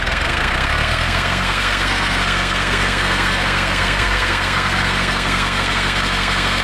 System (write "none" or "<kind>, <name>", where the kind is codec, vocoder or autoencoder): codec, SNAC